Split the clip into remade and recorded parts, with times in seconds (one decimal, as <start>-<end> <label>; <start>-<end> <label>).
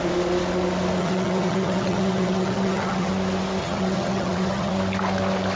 0.0-1.0 recorded; 1.0-3.1 remade; 3.1-3.6 recorded; 3.6-4.7 remade; 4.7-5.6 recorded